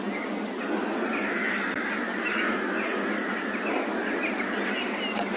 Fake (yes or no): no